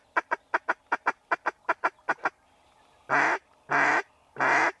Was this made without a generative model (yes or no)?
yes